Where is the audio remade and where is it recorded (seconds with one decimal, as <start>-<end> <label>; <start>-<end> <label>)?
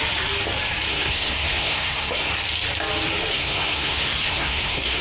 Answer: 0.0-0.9 recorded; 0.9-2.3 remade; 2.3-3.3 recorded; 3.3-5.0 remade